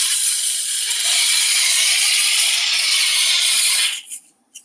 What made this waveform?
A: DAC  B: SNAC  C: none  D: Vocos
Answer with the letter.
D